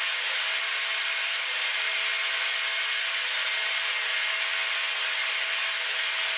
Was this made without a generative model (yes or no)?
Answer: yes